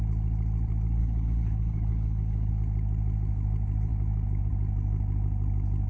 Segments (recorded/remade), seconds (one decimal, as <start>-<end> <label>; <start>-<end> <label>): 0.0-1.0 recorded; 1.0-2.5 remade; 2.5-5.9 recorded